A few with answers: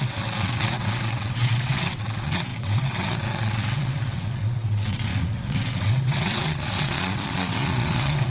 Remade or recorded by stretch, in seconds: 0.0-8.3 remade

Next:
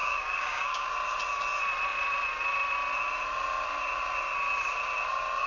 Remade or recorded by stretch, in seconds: 0.0-0.9 remade; 0.9-5.5 recorded

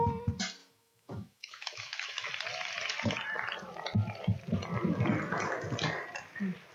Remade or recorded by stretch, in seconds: 0.0-0.6 recorded; 0.6-2.3 remade; 2.3-6.7 recorded

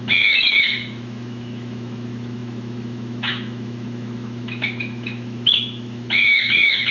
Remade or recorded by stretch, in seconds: 0.0-6.9 remade

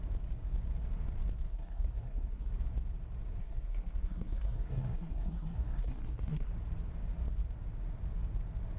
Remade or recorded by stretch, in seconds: 0.0-1.5 recorded; 1.5-2.5 remade; 2.5-3.4 recorded; 3.4-6.5 remade; 6.5-8.8 recorded

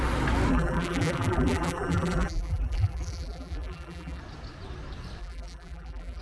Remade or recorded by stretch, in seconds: 0.0-0.5 recorded; 0.5-4.2 remade; 4.2-5.2 recorded; 5.2-6.2 remade